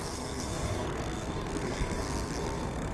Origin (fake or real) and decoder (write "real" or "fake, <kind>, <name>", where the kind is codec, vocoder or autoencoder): fake, codec, SNAC